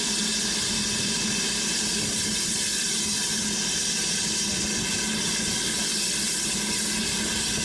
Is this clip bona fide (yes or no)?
yes